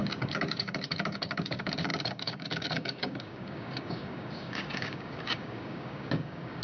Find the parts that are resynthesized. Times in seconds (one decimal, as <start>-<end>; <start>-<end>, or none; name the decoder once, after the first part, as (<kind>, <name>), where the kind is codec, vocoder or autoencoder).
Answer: 0.0-6.6 (codec, DAC)

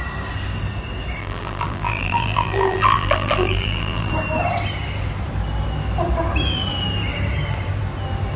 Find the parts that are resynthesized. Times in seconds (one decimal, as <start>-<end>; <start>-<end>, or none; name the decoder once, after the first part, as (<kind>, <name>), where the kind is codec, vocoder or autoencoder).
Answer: 1.2-4.1 (vocoder, BigVGAN v2)